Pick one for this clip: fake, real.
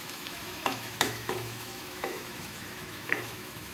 fake